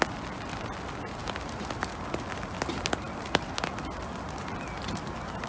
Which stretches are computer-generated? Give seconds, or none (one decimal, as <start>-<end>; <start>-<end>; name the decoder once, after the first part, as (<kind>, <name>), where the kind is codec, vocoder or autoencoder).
none